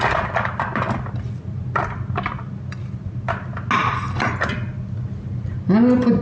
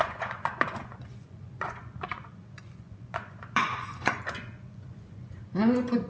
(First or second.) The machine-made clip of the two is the second